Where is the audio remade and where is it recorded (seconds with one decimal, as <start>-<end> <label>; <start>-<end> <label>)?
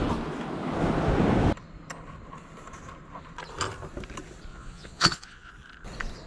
0.0-4.5 recorded; 4.5-5.5 remade; 5.5-6.3 recorded